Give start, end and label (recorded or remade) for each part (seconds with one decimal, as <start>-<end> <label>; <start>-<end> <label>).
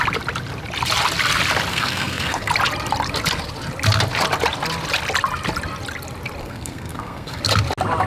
0.0-1.7 recorded; 1.7-2.5 remade; 2.5-6.4 recorded; 6.4-7.4 remade; 7.4-8.1 recorded